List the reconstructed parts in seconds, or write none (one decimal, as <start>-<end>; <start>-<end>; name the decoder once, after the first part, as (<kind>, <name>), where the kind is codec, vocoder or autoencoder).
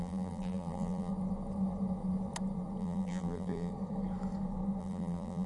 0.0-1.1 (vocoder, BigVGAN v2); 2.8-3.7; 4.8-5.5